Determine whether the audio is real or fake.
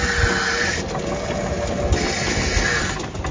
real